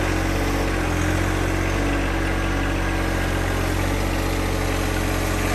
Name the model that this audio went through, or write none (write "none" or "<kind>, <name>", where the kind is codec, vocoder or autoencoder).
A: none